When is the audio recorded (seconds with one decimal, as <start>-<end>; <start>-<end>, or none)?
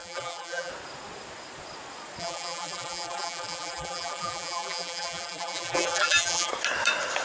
0.7-2.2; 6.5-7.2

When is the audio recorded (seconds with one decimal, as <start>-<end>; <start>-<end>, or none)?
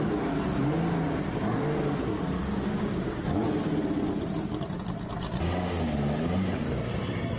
0.0-2.4; 3.2-7.4